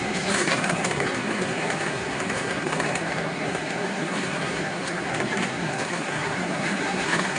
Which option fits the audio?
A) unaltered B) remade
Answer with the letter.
B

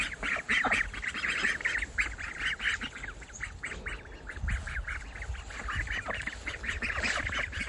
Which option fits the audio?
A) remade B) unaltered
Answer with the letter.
B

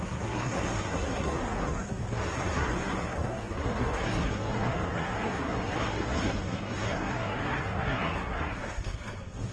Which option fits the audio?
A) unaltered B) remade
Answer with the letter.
B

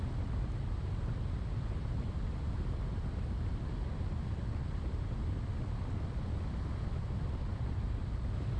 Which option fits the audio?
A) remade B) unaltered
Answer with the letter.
B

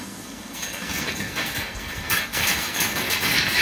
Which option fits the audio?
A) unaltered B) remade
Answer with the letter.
B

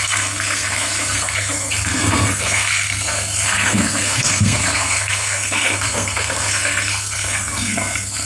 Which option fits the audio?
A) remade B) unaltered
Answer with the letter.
A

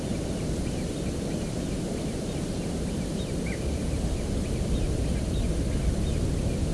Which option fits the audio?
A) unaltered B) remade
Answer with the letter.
A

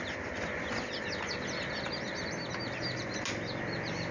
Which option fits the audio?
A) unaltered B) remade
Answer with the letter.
A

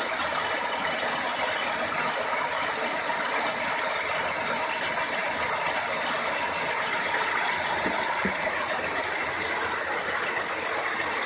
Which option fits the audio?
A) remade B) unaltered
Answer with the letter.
B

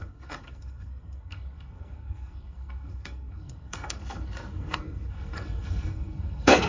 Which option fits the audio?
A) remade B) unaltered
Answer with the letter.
A